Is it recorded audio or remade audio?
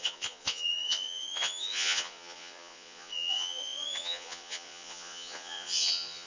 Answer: remade